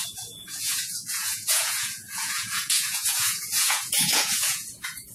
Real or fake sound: fake